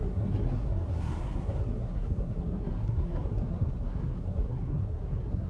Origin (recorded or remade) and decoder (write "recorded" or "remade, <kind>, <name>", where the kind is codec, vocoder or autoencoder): remade, codec, SNAC